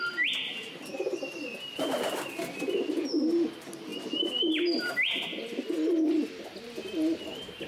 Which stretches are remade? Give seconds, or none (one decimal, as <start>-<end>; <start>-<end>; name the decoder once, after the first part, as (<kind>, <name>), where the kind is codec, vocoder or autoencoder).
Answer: none